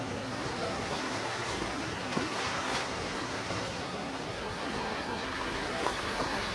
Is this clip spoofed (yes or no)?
yes